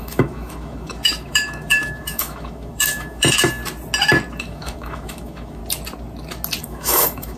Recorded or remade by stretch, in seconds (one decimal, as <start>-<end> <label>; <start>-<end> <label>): 0.0-3.6 remade; 3.6-4.4 recorded; 4.4-5.6 remade; 5.6-6.6 recorded; 6.6-7.4 remade